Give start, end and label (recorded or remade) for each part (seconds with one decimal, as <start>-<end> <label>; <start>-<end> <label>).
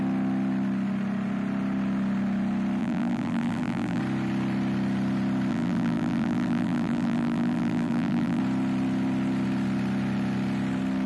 0.0-2.8 recorded; 2.8-4.0 remade; 4.0-5.5 recorded; 5.5-8.4 remade; 8.4-11.1 recorded